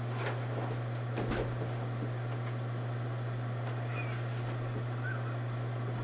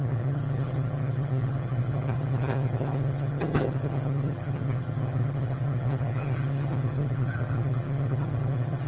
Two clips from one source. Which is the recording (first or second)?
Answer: first